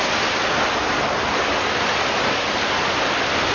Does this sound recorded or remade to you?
recorded